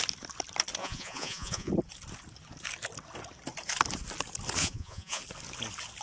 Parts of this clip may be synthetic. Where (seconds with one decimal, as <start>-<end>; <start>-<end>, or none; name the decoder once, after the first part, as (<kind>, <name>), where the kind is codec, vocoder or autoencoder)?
0.8-1.7 (vocoder, Vocos); 4.6-5.2